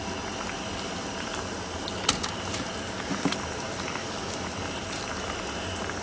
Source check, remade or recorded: recorded